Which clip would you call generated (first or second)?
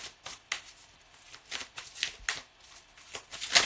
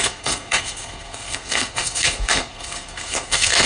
second